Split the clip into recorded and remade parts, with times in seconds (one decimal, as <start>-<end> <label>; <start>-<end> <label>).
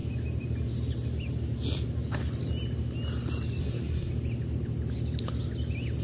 0.0-3.6 recorded; 3.6-4.1 remade; 4.1-6.0 recorded